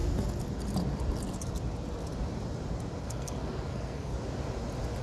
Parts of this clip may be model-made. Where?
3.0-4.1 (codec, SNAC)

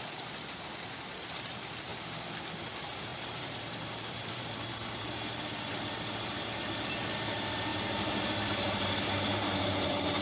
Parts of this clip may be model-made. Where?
0.0-1.9 (vocoder, BigVGAN v2); 2.6-10.2

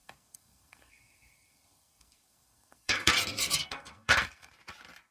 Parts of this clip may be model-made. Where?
0.0-3.1 (codec, SNAC); 3.6-4.5

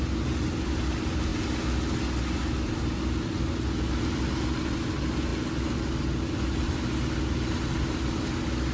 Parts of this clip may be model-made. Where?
none

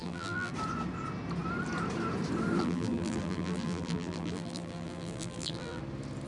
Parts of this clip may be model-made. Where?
0.0-0.5 (vocoder, BigVGAN v2); 2.6-5.8

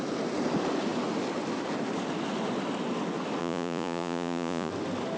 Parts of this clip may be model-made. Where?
3.4-4.7 (vocoder, Vocos)